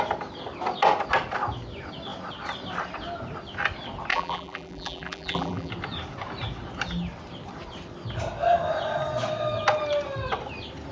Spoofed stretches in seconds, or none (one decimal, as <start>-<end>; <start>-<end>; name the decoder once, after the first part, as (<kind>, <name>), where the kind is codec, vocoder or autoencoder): 4.1-5.7 (vocoder, BigVGAN v2)